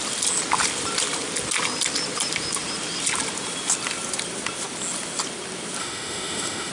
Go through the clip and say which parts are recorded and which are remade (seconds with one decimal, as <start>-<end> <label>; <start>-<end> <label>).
0.0-5.8 recorded; 5.8-6.7 remade